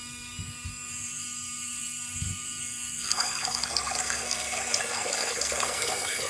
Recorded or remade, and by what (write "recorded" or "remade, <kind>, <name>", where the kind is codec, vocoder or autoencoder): remade, codec, SNAC